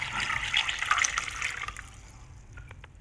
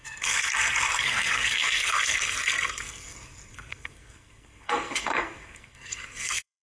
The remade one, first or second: second